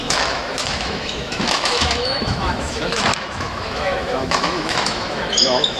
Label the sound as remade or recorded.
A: remade